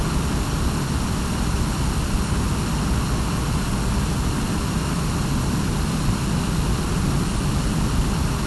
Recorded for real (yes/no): yes